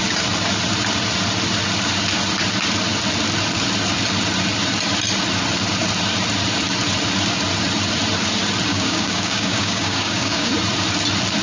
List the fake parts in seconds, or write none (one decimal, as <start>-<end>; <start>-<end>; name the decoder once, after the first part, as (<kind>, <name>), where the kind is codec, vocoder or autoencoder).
8.7-10.5 (codec, DAC)